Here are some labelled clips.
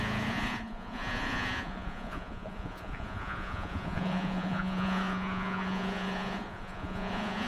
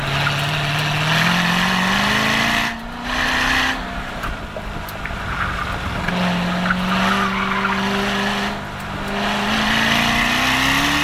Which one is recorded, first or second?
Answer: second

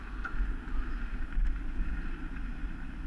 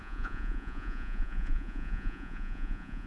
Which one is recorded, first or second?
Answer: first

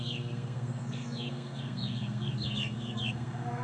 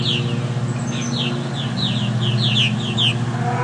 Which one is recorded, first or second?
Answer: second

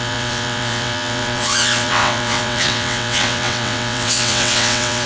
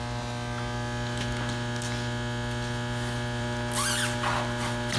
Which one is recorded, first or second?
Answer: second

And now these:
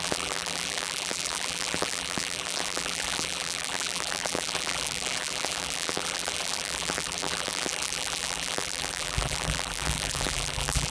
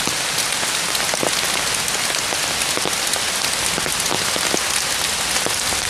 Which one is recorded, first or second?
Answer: second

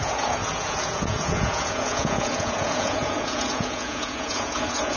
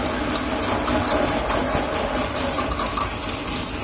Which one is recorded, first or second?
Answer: second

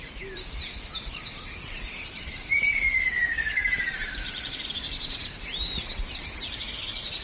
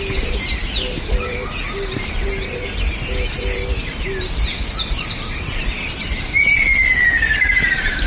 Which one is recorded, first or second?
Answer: second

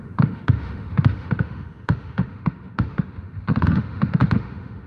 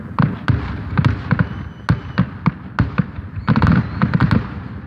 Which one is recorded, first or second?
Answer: second